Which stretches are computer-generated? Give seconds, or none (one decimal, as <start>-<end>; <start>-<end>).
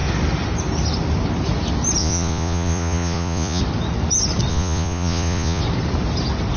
2.0-3.6; 4.5-5.6